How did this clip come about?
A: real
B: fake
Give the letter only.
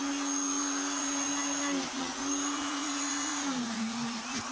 B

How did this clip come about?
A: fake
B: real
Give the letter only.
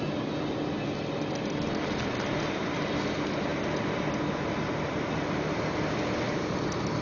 B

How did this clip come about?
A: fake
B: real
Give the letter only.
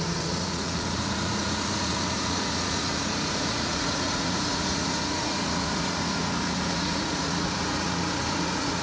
A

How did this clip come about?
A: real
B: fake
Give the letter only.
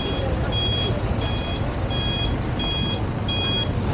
A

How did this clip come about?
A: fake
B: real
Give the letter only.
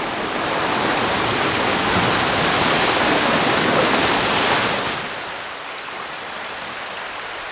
B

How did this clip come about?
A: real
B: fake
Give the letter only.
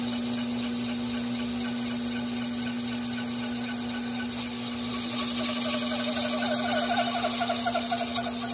A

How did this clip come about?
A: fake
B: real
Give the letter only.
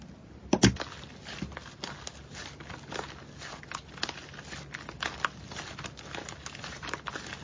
B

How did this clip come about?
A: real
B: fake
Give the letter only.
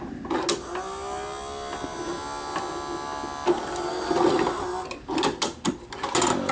A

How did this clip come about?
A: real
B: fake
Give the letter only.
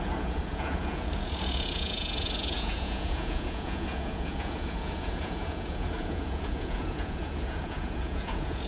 B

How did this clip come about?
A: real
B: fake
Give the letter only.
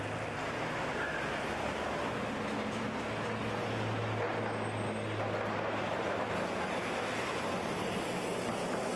A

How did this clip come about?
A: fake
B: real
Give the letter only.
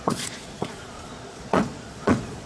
A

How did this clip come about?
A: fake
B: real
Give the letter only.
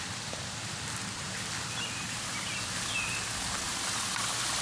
B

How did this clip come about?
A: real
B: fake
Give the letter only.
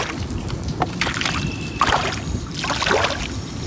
A